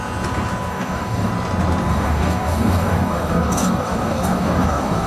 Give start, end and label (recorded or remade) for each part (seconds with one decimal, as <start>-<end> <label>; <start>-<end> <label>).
0.0-0.7 recorded; 0.7-1.3 remade; 1.3-1.9 recorded; 1.9-5.1 remade